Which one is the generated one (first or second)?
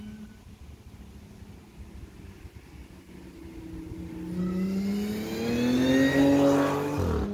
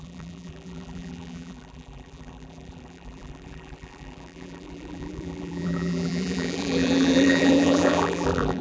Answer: second